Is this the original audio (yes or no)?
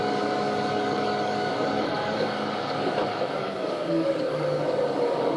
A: no